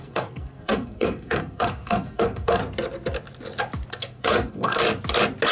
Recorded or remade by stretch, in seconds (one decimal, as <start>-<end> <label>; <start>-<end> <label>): 0.0-2.6 remade; 2.6-3.9 recorded; 3.9-4.8 remade; 4.8-5.5 recorded